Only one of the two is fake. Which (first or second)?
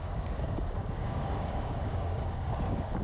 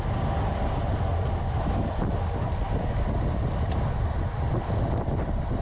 first